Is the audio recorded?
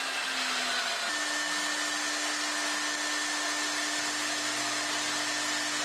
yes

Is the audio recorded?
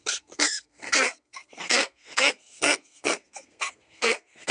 no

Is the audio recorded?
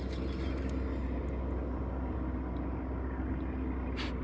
yes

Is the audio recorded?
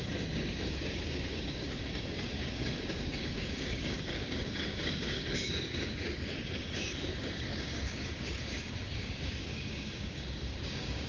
no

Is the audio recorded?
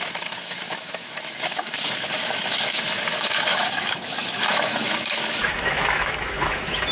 no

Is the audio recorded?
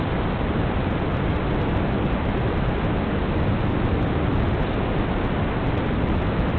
yes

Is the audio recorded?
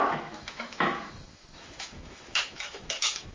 no